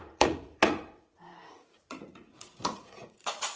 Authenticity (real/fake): fake